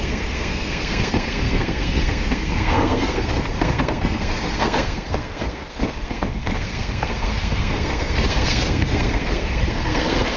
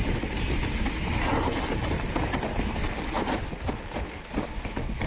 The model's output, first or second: first